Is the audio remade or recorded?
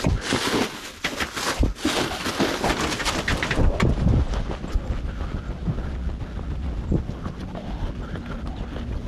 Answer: recorded